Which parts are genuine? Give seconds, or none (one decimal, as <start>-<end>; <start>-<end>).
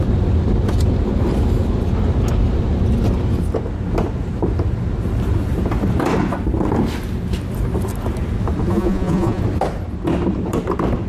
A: 0.0-8.7; 9.4-11.1